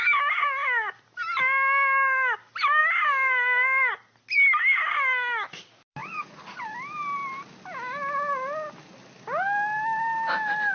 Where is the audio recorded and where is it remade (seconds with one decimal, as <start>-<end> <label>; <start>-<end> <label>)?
0.0-6.0 recorded; 6.0-6.6 remade; 6.6-10.7 recorded